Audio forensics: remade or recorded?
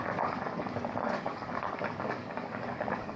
remade